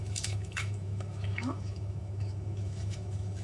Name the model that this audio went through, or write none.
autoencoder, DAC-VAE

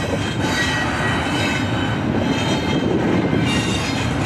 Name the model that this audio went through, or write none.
none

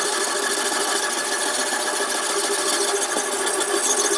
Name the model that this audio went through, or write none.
none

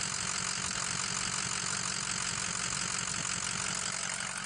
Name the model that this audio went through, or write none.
none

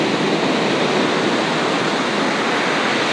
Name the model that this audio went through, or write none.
none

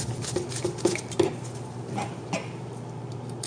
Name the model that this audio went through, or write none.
none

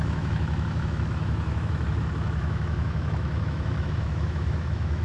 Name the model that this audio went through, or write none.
autoencoder, DAC-VAE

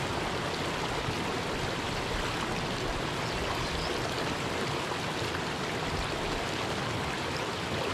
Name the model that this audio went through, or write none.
none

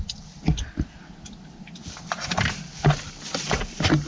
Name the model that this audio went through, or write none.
none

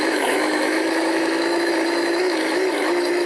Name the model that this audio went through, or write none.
autoencoder, DAC-VAE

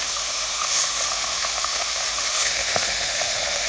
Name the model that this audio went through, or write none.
autoencoder, DAC-VAE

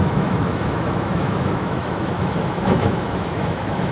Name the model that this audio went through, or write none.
autoencoder, DAC-VAE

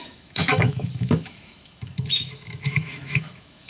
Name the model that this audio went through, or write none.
autoencoder, DAC-VAE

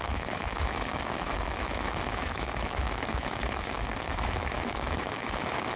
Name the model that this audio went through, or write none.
autoencoder, DAC-VAE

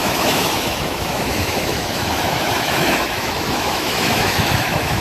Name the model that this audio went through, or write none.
autoencoder, DAC-VAE